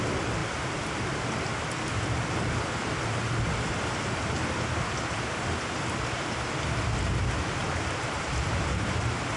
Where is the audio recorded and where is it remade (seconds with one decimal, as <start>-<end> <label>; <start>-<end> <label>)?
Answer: 0.0-0.4 recorded; 0.4-1.6 remade; 1.6-7.6 recorded; 7.6-8.7 remade; 8.7-9.4 recorded